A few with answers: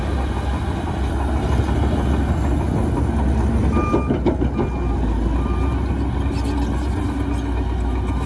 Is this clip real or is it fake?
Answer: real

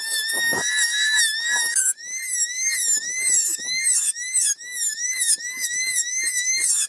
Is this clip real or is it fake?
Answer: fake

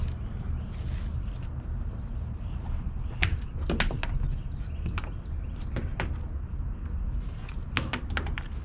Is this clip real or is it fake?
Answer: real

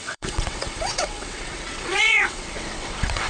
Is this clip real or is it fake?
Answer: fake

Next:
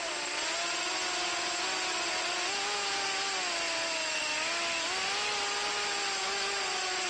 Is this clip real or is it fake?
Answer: real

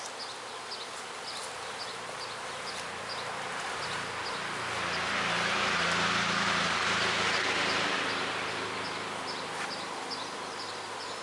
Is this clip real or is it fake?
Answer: real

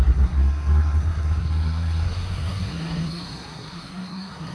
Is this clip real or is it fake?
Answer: fake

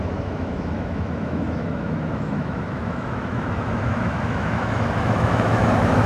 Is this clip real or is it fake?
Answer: fake